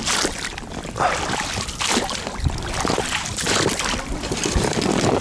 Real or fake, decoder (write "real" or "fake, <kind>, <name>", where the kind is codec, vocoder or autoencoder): real